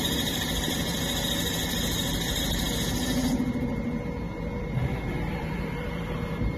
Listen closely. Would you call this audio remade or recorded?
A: remade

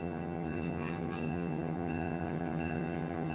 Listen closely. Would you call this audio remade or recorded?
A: remade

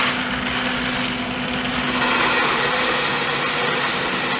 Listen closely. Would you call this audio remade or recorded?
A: recorded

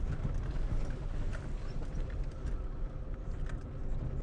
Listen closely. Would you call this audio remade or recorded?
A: recorded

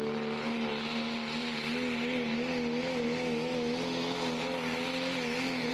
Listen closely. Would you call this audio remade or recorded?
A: recorded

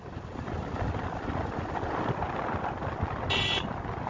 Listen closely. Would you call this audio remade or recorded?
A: recorded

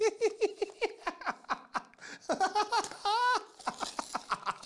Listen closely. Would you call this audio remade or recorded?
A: recorded